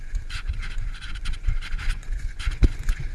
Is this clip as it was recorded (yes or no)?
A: no